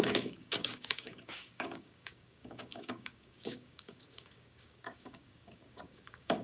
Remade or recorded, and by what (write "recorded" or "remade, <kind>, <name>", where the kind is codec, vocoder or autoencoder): remade, codec, DAC